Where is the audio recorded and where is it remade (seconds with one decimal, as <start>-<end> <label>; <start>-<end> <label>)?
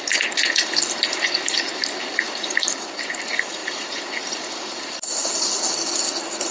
0.0-6.5 recorded